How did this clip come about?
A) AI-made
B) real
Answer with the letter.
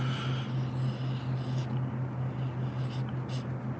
B